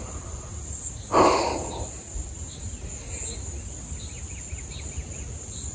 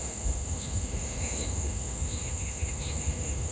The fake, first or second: second